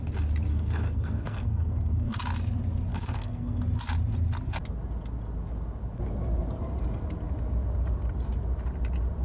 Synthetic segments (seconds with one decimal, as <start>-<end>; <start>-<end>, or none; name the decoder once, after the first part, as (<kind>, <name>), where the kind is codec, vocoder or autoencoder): 0.5-2.2 (codec, SNAC); 2.9-3.6